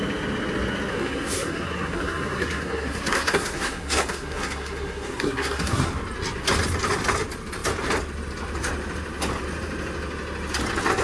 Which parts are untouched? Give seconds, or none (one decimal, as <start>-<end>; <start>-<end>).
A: 0.0-0.9; 5.9-11.0